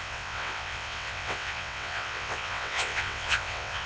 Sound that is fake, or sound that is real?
fake